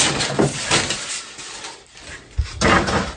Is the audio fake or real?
real